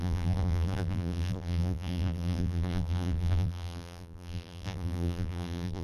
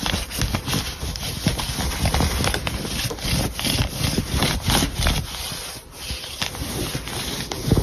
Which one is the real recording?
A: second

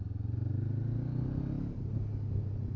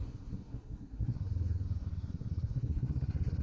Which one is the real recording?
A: first